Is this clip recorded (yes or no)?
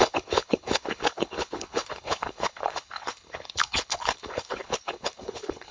no